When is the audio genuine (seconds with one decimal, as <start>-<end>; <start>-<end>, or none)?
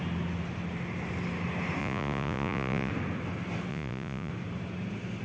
0.0-1.8; 2.9-3.7; 4.3-5.2